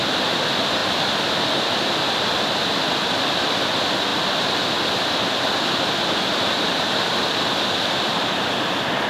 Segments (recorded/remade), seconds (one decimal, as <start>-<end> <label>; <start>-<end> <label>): 0.0-9.1 recorded